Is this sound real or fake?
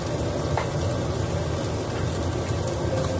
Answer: real